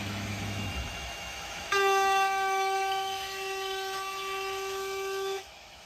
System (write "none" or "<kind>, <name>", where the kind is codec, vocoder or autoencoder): autoencoder, DAC-VAE